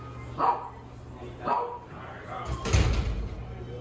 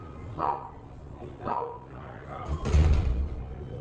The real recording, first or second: first